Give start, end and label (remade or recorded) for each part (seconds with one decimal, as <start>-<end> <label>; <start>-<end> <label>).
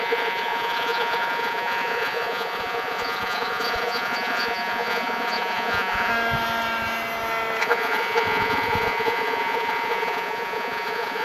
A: 0.0-6.1 remade; 6.1-7.6 recorded; 7.6-11.2 remade